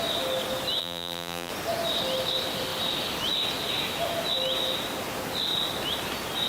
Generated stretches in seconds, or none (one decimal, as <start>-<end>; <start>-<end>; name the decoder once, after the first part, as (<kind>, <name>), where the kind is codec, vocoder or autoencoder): 0.8-1.5 (vocoder, BigVGAN v2)